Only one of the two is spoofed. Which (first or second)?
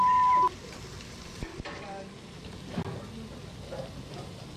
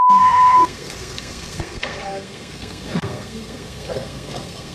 second